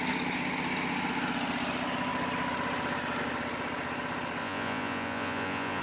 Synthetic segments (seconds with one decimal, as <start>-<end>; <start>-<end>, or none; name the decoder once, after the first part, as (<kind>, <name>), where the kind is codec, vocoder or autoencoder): 4.4-5.8 (vocoder, Vocos)